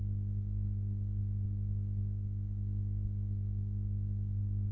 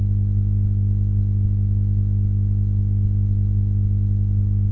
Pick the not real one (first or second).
first